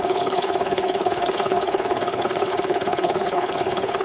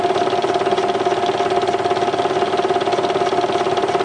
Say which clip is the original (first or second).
second